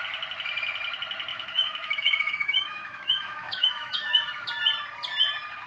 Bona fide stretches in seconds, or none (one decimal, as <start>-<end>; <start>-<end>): 0.0-1.3; 4.5-5.7

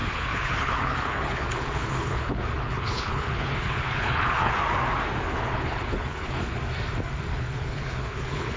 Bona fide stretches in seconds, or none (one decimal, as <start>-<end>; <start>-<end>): 4.5-5.3; 6.6-7.3